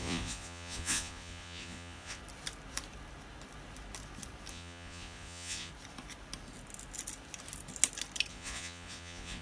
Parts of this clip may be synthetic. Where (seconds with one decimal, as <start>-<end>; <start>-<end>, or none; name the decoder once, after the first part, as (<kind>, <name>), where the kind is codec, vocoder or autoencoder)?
0.0-2.2 (vocoder, Vocos); 4.5-5.7; 8.3-9.4